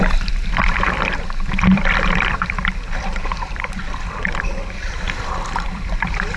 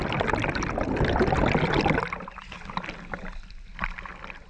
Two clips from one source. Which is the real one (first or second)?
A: second